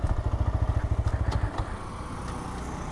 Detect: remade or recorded recorded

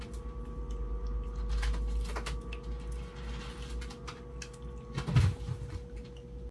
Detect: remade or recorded recorded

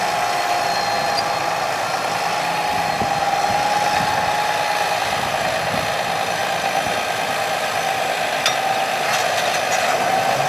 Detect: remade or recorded recorded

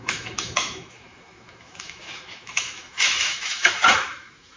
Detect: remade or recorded remade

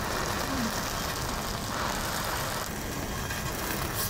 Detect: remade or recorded recorded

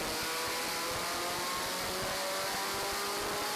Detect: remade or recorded recorded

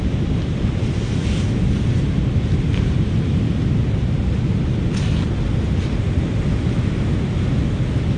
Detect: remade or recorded recorded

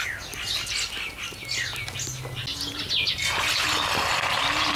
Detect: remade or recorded recorded